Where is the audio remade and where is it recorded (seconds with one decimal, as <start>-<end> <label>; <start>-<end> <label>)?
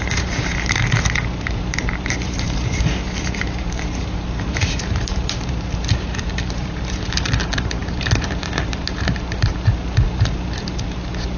0.0-11.4 remade